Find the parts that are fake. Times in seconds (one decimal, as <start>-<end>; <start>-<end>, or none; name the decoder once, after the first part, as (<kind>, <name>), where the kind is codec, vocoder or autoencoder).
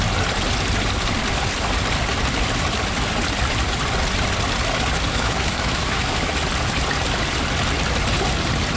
5.1-6.3 (autoencoder, DAC-VAE)